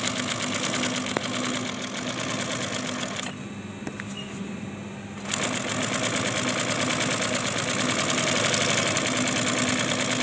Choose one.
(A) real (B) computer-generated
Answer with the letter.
A